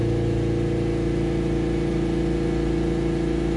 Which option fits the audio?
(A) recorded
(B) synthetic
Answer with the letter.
A